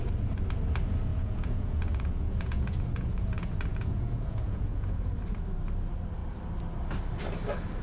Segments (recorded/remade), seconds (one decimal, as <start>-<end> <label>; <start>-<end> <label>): 0.0-1.1 recorded; 1.1-5.1 remade; 5.1-7.8 recorded